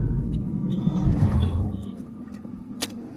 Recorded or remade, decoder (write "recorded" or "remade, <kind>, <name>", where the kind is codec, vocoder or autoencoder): remade, codec, SNAC